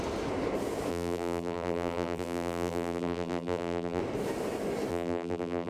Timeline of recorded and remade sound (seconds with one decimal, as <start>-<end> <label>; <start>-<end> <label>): 0.0-0.9 recorded; 0.9-4.0 remade; 4.0-4.9 recorded; 4.9-5.7 remade